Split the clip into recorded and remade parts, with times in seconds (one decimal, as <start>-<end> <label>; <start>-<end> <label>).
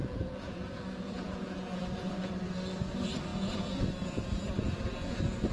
0.0-2.3 remade; 2.3-3.3 recorded; 3.3-5.5 remade